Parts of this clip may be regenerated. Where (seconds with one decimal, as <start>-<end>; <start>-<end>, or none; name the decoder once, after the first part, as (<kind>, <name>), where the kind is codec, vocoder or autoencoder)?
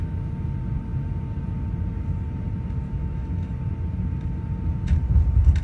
3.0-3.5 (autoencoder, DAC-VAE)